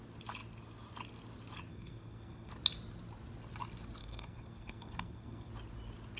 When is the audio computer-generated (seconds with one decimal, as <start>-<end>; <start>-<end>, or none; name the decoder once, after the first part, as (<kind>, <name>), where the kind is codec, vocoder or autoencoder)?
1.7-2.5 (codec, SNAC); 4.0-5.5